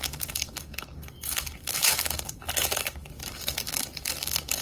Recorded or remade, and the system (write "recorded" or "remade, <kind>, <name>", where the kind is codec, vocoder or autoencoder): remade, codec, DAC